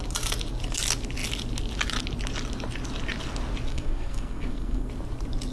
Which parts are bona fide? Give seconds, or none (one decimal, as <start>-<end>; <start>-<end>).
0.0-3.7; 4.9-5.5